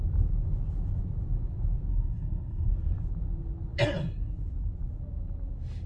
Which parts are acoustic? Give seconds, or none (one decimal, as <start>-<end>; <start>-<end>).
0.0-1.9; 2.7-5.9